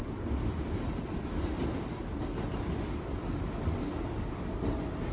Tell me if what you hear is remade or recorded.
recorded